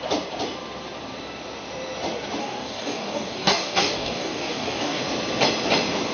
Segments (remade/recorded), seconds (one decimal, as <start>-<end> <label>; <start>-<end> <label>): 0.0-2.4 recorded; 2.4-5.0 remade; 5.0-6.1 recorded